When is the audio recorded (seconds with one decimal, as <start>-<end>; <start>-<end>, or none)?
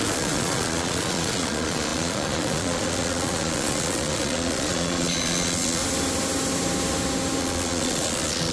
5.8-7.4